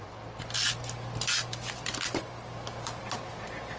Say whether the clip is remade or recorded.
recorded